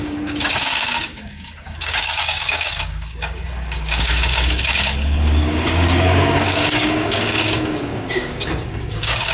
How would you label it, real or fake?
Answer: fake